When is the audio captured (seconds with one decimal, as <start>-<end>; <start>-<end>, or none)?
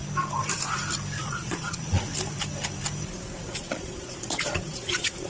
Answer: 0.0-1.2; 2.1-3.5